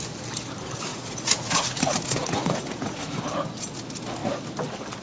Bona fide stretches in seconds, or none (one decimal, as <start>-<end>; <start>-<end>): 0.0-0.9; 3.2-5.0